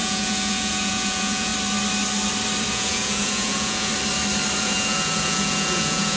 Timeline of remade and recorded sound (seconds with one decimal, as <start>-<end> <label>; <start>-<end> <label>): 0.0-1.5 remade; 1.5-2.7 recorded; 2.7-3.9 remade; 3.9-4.6 recorded; 4.6-6.2 remade